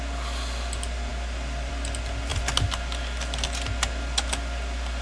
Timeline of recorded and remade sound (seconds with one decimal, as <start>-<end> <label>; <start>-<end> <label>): 0.0-5.0 recorded